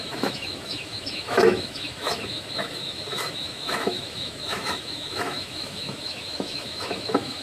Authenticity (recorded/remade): remade